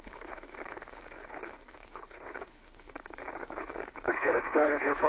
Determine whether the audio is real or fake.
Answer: fake